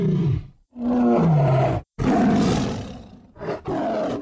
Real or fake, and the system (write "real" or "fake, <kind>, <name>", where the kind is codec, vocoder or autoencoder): real